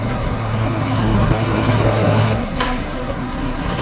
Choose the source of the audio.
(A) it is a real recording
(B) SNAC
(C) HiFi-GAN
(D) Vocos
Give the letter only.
B